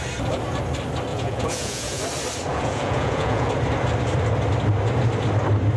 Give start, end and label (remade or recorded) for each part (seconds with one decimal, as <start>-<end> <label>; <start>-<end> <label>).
0.0-1.1 recorded; 1.1-2.0 remade; 2.0-2.5 recorded; 2.5-3.5 remade; 3.5-5.8 recorded